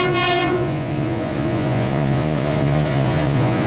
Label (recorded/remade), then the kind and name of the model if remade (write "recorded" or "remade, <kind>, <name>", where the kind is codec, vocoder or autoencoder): remade, vocoder, Vocos